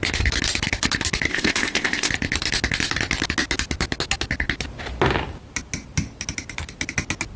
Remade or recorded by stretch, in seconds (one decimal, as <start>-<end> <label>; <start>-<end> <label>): 0.0-1.3 recorded; 1.3-2.1 remade; 2.1-7.4 recorded